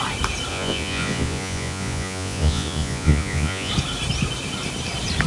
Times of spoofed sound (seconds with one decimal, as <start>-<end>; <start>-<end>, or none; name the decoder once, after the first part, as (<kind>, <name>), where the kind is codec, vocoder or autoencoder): 0.5-3.7 (vocoder, Vocos)